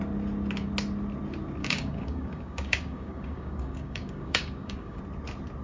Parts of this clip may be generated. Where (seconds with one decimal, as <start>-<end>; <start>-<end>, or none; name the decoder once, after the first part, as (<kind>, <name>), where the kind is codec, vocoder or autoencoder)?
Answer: 1.6-5.0 (codec, DAC)